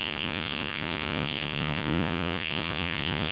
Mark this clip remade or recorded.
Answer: remade